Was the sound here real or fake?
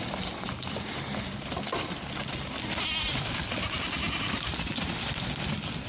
real